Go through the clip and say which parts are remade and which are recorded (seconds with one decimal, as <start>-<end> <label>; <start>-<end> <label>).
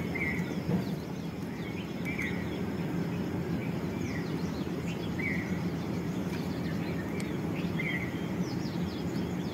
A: 0.0-1.4 recorded; 1.4-2.2 remade; 2.2-3.6 recorded; 3.6-6.5 remade; 6.5-7.3 recorded; 7.3-8.1 remade; 8.1-9.5 recorded